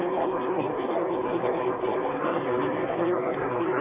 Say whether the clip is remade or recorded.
remade